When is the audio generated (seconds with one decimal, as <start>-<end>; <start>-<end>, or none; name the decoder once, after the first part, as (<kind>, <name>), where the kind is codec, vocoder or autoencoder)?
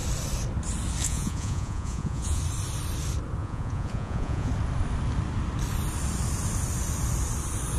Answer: 1.0-2.4 (vocoder, Vocos); 3.4-4.5